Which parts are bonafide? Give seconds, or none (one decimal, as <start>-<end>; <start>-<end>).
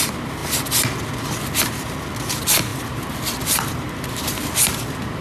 0.0-5.2